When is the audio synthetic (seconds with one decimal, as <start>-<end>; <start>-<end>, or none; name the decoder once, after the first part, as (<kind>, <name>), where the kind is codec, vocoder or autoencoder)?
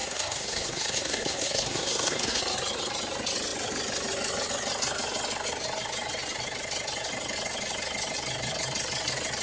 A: 0.0-2.4 (codec, SNAC)